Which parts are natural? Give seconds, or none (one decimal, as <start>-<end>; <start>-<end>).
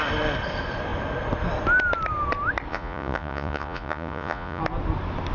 0.0-2.7; 4.6-5.3